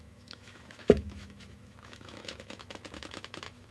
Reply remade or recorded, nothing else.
remade